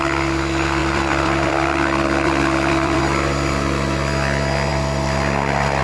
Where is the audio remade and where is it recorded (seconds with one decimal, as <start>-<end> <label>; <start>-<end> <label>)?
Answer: 0.0-0.8 recorded; 0.8-3.0 remade; 3.0-5.8 recorded